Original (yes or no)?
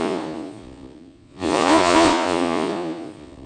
no